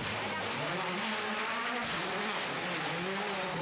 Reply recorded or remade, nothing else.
recorded